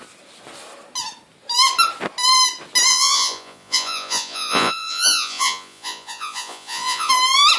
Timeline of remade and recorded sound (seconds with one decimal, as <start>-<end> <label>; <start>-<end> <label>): 0.0-2.9 recorded; 2.9-7.1 remade; 7.1-7.6 recorded